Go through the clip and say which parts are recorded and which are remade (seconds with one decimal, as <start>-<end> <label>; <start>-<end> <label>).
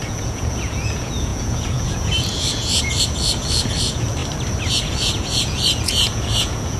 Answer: 0.0-4.2 remade; 4.2-4.7 recorded; 4.7-6.8 remade